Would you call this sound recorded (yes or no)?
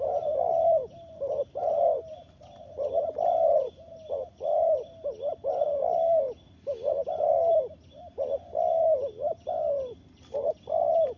yes